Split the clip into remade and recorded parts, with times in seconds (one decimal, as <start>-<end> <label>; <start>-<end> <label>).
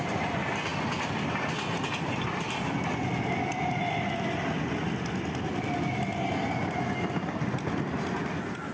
0.0-8.7 recorded